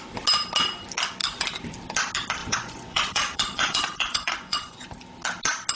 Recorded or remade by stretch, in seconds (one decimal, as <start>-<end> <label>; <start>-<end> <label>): 0.0-2.4 recorded; 2.4-4.9 remade; 4.9-5.8 recorded

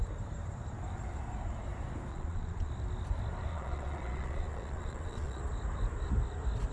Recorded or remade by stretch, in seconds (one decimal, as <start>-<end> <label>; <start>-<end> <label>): 0.0-2.1 recorded; 2.1-2.7 remade; 2.7-3.5 recorded; 3.5-5.4 remade; 5.4-6.7 recorded

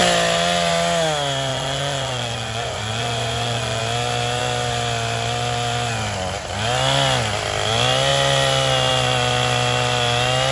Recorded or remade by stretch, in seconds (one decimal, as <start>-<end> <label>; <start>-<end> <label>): 0.0-1.5 recorded; 1.5-3.8 remade; 3.8-10.5 recorded

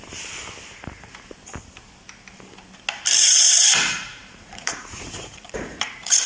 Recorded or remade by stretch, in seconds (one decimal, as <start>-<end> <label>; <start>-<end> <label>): 0.0-3.2 recorded; 3.2-6.3 remade

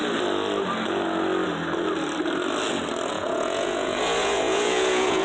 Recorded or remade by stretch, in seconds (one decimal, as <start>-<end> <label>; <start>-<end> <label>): 0.0-3.1 recorded; 3.1-5.2 remade